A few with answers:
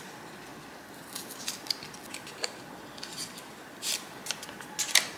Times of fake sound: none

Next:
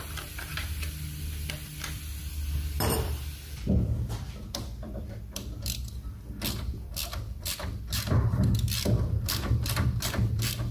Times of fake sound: 0.0-10.7 (vocoder, BigVGAN v2)

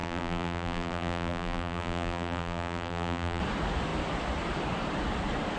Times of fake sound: 0.0-3.4 (vocoder, BigVGAN v2)

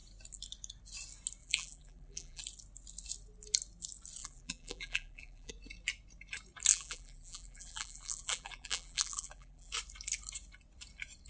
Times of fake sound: 1.4-2.4 (vocoder, BigVGAN v2); 4.2-5.5; 6.7-9.7

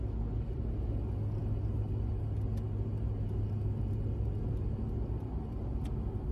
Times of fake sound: none

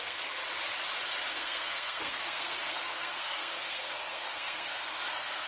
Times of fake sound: 0.0-0.4 (codec, SNAC); 1.3-5.5